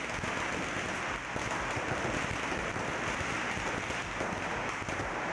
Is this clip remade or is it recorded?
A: recorded